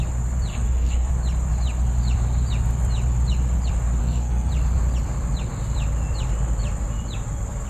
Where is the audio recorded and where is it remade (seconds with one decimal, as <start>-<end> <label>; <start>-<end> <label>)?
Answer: 0.0-0.5 recorded; 0.5-1.1 remade; 1.1-4.0 recorded; 4.0-4.5 remade; 4.5-7.7 recorded